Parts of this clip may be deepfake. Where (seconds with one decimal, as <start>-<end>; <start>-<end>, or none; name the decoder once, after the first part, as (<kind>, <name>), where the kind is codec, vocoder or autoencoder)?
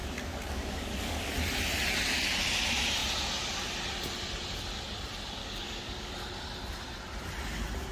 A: 0.0-1.3 (codec, DAC); 5.4-6.1